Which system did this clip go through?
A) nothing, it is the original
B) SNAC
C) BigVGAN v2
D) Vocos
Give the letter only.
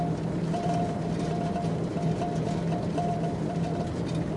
C